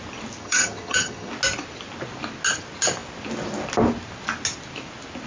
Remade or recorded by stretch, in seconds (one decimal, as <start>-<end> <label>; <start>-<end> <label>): 0.0-0.4 recorded; 0.4-1.3 remade; 1.3-5.3 recorded